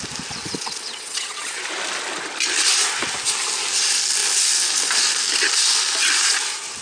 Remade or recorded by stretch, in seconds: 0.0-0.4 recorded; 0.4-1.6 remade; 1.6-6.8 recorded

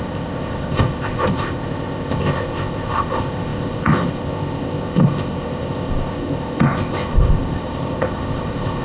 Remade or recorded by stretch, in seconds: 0.0-8.8 remade

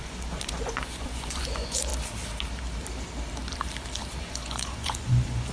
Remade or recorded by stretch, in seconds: 0.0-1.9 remade; 1.9-4.2 recorded; 4.2-5.5 remade